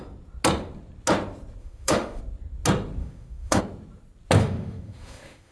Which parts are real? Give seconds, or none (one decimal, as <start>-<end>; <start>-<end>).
0.0-1.6; 2.2-3.0; 3.6-4.4